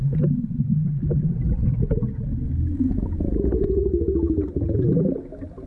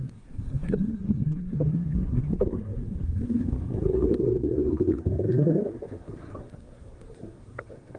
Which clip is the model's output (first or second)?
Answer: second